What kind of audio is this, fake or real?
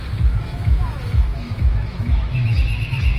fake